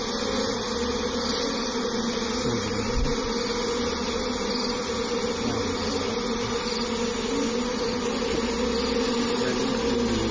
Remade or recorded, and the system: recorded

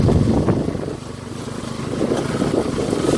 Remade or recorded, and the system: recorded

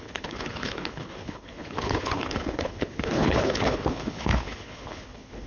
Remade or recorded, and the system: remade, codec, HILCodec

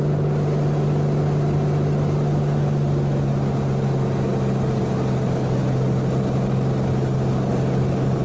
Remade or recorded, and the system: recorded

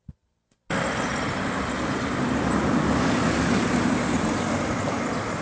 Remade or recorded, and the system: recorded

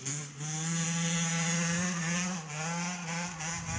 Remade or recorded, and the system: recorded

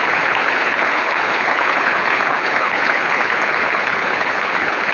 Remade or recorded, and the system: remade, codec, HILCodec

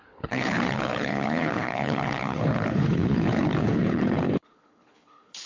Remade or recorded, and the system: remade, codec, HILCodec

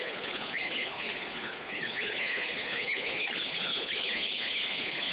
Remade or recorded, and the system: remade, codec, HILCodec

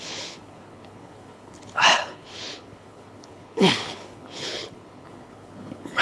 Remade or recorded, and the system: remade, codec, HILCodec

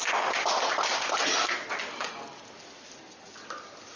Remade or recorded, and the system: recorded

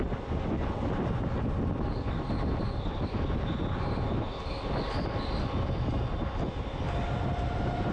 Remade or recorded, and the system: recorded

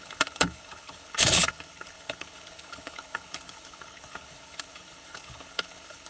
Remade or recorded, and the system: remade, codec, HILCodec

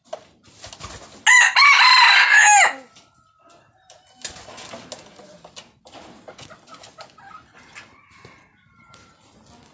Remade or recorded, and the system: recorded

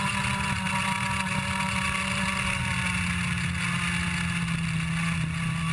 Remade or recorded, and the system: recorded